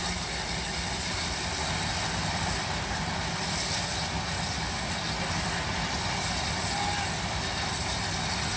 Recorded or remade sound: recorded